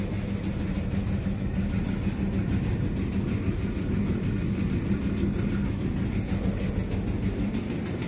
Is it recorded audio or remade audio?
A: recorded